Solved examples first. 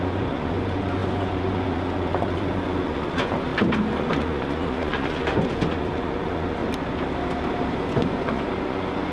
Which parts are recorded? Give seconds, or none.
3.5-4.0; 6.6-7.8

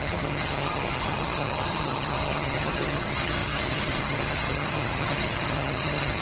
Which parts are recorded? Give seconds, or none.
none

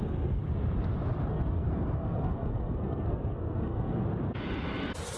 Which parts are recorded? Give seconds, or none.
0.4-1.3; 4.0-5.2

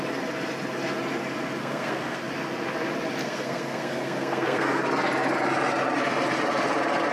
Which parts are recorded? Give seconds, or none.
0.0-1.6; 2.2-3.2; 4.8-7.1

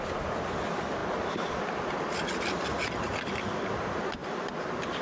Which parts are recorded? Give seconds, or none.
0.0-5.0